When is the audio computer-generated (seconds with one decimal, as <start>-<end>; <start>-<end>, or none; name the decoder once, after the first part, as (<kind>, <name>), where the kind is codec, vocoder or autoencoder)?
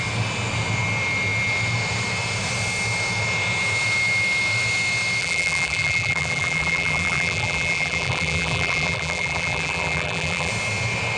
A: 5.2-10.5 (vocoder, BigVGAN v2)